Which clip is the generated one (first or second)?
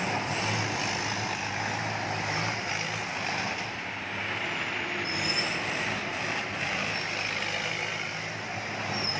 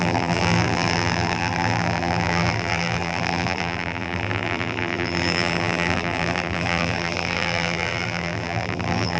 second